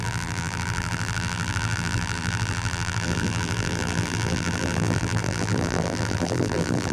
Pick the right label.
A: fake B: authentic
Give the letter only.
A